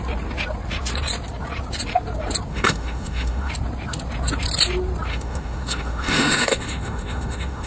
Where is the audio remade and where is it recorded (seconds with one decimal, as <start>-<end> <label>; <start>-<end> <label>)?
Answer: 0.0-2.5 recorded; 2.5-3.5 remade; 3.5-5.1 recorded; 5.1-7.7 remade